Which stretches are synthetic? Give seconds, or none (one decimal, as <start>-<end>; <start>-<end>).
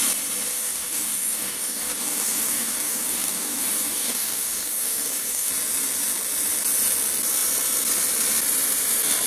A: 0.5-5.5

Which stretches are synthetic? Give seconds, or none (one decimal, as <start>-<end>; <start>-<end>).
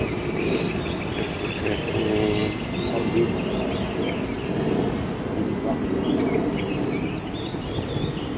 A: none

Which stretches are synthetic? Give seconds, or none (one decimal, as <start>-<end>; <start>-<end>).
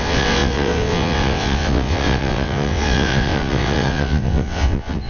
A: 0.0-5.1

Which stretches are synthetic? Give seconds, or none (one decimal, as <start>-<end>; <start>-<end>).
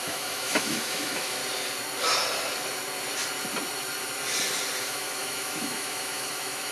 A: 0.0-1.4; 4.8-6.7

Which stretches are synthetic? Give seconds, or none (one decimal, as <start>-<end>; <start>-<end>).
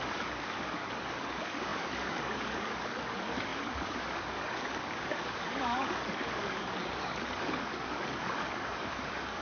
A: 0.0-9.4